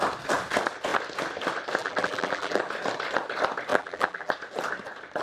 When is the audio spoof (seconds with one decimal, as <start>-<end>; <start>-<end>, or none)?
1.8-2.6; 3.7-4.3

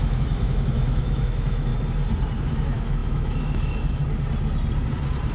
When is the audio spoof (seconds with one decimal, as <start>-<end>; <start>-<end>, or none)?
0.0-1.7; 2.4-4.0

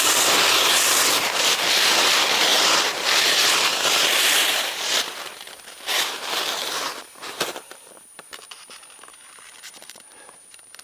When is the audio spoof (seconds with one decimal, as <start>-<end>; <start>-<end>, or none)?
0.0-10.8

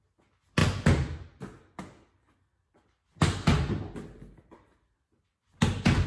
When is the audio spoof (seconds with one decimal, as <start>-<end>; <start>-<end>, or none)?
none

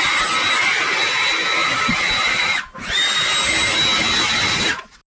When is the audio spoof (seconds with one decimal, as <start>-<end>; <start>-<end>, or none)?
none